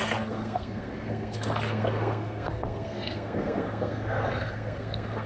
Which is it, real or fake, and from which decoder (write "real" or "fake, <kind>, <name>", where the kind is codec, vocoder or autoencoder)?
fake, codec, SNAC